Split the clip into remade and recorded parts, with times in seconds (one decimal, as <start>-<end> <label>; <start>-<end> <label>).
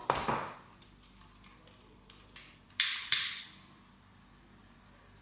0.0-5.2 recorded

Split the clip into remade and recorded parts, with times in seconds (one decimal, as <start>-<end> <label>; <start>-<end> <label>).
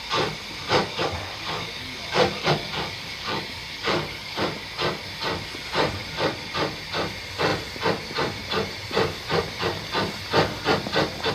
0.0-0.8 recorded; 0.8-4.4 remade; 4.4-11.3 recorded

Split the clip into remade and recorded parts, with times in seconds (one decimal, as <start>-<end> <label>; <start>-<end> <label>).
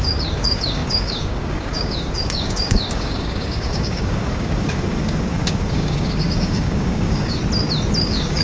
0.0-7.4 remade; 7.4-8.0 recorded; 8.0-8.4 remade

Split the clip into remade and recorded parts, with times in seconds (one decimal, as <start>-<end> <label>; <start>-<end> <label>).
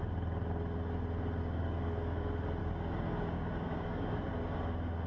0.0-1.4 recorded; 1.4-2.2 remade; 2.2-2.6 recorded; 2.6-4.3 remade; 4.3-5.1 recorded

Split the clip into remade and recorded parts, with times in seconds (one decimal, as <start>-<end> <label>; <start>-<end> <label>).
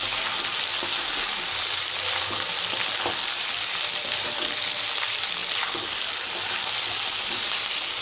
0.0-8.0 recorded